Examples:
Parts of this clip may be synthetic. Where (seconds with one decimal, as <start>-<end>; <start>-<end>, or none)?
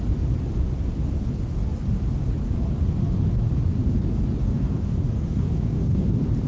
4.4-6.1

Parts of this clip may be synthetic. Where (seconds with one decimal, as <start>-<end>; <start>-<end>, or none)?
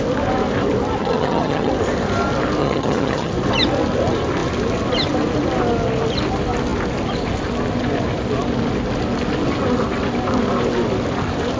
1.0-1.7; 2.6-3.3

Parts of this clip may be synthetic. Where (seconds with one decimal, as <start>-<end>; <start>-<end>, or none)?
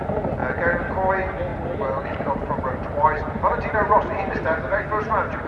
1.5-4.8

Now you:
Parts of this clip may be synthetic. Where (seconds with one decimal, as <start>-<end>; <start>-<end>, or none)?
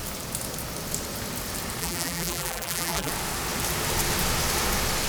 1.8-3.1